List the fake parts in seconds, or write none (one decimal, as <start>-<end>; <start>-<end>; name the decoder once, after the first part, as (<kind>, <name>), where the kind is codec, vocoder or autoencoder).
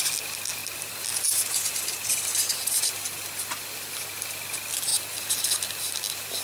none